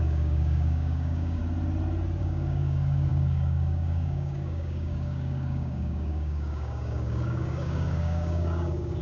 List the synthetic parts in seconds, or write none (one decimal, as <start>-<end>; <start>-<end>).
0.0-1.4; 2.2-9.0

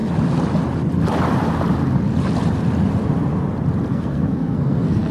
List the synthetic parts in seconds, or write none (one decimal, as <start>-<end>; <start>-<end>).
3.9-5.1

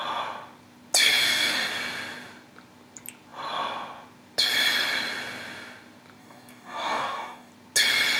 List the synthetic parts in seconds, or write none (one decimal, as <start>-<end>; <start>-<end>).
1.2-1.7; 6.2-7.5

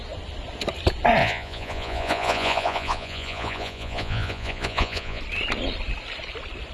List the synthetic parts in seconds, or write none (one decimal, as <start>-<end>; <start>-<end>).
1.2-5.2

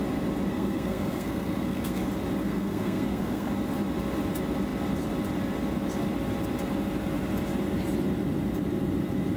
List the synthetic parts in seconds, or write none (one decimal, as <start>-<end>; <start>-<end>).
0.5-2.0; 2.4-3.5

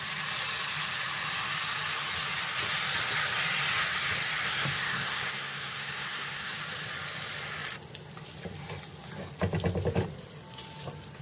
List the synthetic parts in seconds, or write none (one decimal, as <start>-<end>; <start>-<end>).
4.5-6.6